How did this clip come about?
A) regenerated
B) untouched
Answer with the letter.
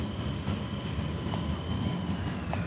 B